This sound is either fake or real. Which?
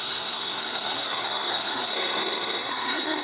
fake